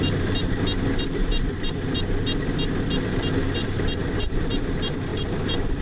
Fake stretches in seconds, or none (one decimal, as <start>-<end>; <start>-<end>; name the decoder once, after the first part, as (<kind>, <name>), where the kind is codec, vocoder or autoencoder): 1.2-1.8 (vocoder, BigVGAN v2); 3.6-4.5; 5.1-5.8